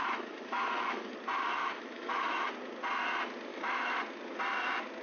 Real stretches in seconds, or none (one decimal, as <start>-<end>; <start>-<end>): 1.1-1.6; 2.5-3.5; 4.0-5.0